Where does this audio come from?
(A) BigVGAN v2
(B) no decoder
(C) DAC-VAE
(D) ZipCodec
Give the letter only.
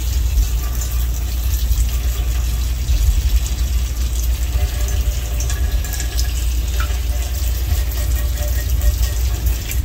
B